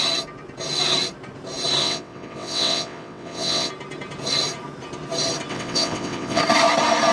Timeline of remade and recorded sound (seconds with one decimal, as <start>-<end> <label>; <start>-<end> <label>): 0.0-1.8 recorded; 1.8-3.7 remade; 3.7-5.5 recorded; 5.5-6.4 remade; 6.4-7.1 recorded